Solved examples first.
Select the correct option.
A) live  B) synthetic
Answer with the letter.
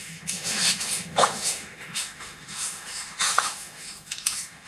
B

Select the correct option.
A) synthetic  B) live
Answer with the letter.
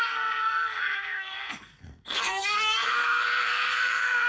A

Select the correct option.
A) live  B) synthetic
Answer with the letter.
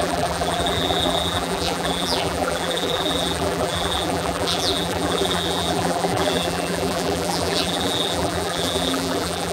B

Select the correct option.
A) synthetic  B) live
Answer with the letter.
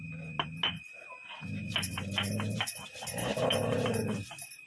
B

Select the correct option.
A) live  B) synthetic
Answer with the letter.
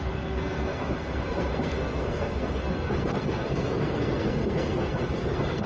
B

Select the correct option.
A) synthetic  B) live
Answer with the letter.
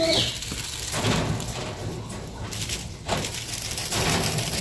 B